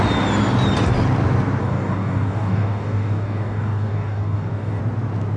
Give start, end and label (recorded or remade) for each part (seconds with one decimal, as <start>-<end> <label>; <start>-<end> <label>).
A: 0.0-1.6 recorded; 1.6-4.8 remade; 4.8-5.4 recorded

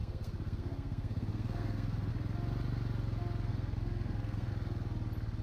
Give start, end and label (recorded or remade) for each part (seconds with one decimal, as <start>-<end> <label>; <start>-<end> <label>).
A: 0.0-2.1 remade; 2.1-3.5 recorded; 3.5-4.5 remade; 4.5-5.4 recorded

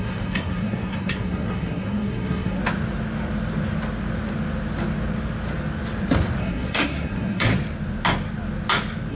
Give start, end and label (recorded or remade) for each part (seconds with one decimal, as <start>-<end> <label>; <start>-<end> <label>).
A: 0.0-2.6 remade; 2.6-6.4 recorded; 6.4-7.5 remade; 7.5-9.1 recorded

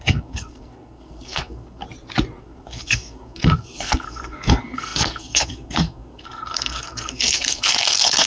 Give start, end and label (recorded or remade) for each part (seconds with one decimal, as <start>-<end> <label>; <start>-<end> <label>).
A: 0.0-1.8 remade; 1.8-2.4 recorded; 2.4-8.3 remade

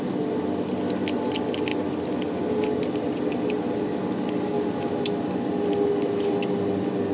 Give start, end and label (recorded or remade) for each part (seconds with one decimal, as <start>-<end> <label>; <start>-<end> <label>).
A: 0.0-7.1 recorded

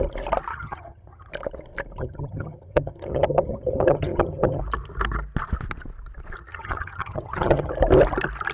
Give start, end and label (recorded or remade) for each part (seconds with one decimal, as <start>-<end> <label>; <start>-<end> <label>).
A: 0.0-0.5 recorded; 0.5-1.3 remade; 1.3-2.0 recorded; 2.0-4.6 remade; 4.6-6.5 recorded; 6.5-7.7 remade; 7.7-8.5 recorded

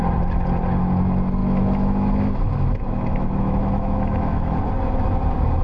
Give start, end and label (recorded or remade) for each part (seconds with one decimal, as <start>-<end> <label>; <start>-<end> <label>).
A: 0.0-1.4 recorded; 1.4-4.6 remade; 4.6-5.6 recorded